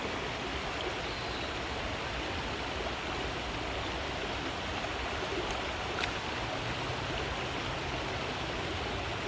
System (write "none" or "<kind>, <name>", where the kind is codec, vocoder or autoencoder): none